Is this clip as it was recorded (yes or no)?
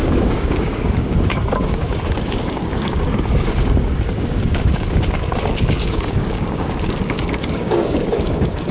no